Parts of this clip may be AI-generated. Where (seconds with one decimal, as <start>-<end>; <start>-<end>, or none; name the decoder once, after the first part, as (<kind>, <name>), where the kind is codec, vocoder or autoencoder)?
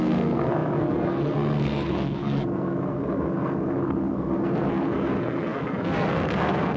0.0-6.8 (codec, SNAC)